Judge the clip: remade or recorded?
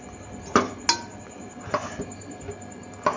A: recorded